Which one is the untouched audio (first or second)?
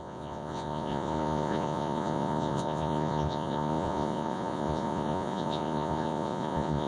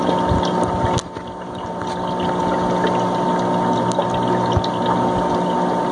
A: second